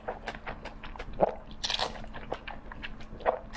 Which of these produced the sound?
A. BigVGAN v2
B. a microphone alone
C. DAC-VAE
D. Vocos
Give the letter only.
B